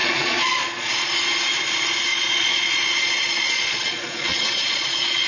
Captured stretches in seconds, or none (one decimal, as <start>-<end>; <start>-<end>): 0.9-2.1